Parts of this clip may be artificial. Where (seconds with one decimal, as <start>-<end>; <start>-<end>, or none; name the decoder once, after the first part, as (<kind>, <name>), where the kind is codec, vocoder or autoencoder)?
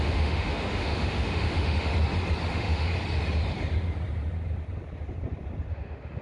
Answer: 0.0-1.9 (autoencoder, DAC-VAE); 2.5-2.9; 5.7-6.2